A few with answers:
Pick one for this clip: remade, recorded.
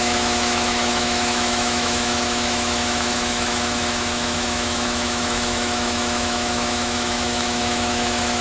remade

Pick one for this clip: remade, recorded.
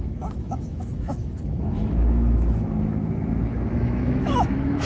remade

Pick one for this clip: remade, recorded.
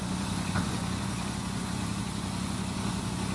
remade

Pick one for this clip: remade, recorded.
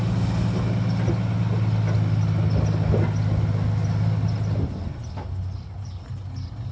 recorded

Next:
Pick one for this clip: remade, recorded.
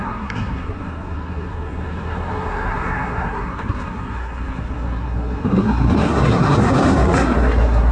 remade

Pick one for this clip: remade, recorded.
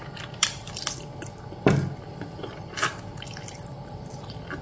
remade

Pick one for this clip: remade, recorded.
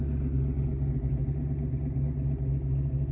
recorded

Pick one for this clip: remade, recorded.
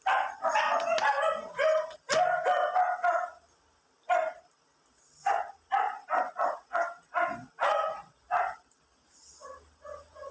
recorded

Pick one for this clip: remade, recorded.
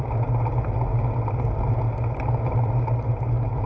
recorded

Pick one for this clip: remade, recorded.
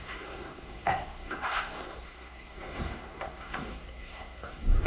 remade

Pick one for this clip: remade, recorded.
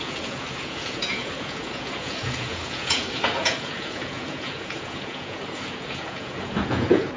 remade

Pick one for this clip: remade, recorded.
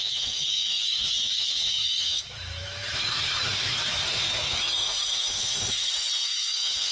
remade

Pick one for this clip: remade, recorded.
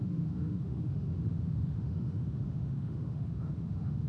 remade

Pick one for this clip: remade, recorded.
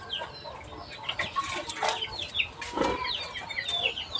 recorded